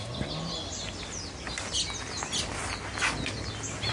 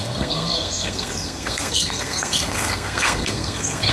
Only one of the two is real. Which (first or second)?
first